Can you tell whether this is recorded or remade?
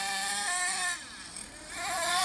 recorded